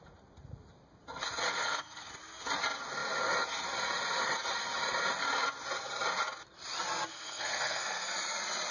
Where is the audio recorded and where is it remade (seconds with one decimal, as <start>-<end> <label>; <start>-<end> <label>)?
0.0-1.5 recorded; 1.5-2.1 remade; 2.1-7.1 recorded; 7.1-8.1 remade; 8.1-8.7 recorded